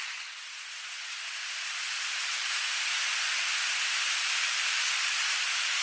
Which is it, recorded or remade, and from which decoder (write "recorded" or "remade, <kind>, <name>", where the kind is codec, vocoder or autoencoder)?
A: recorded